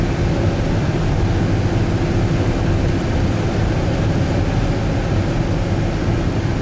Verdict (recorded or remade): recorded